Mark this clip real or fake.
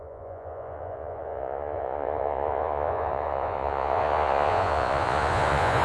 fake